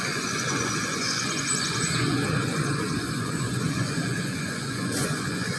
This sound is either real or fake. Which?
fake